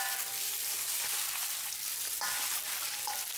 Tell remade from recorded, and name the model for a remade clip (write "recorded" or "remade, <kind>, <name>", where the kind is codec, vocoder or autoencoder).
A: recorded